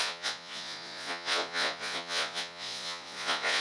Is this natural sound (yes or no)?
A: no